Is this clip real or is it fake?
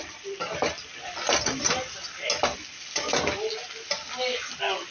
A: real